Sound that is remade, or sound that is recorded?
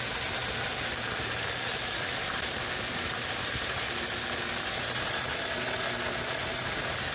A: recorded